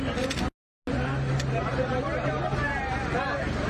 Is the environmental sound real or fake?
real